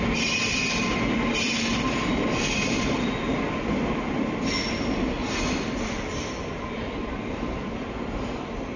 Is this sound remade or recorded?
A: recorded